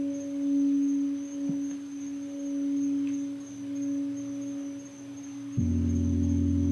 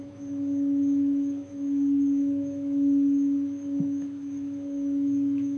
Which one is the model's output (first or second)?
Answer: second